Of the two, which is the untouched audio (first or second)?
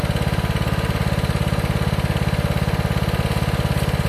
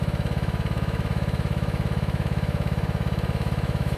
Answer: first